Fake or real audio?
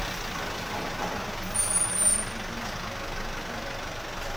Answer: real